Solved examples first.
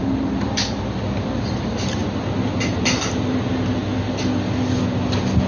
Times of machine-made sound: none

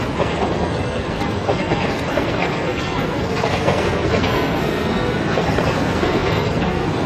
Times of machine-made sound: 0.0-7.1 (codec, SNAC)

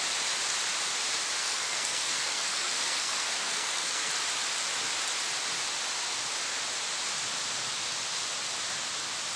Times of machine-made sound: 1.4-4.1 (codec, SNAC)